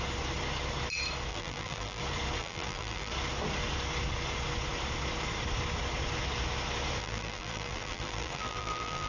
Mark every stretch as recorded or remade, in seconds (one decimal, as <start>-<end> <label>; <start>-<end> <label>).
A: 0.0-1.3 recorded; 1.3-2.0 remade; 2.0-2.4 recorded; 2.4-3.1 remade; 3.1-7.0 recorded; 7.0-9.1 remade